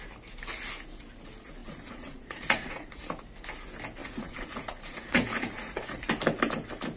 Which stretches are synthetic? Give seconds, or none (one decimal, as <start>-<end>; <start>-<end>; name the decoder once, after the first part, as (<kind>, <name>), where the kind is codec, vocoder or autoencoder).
1.6-3.0 (vocoder, Vocos); 4.0-6.1